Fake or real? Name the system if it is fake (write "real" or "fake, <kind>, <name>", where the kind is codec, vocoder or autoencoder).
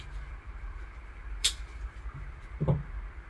fake, vocoder, BigVGAN v2